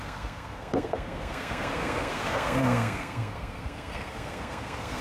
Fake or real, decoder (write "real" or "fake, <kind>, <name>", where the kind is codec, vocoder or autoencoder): fake, codec, SNAC